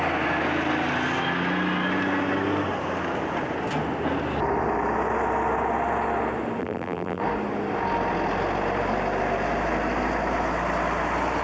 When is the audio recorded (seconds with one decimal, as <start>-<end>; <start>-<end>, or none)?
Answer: 0.0-6.6; 7.2-11.4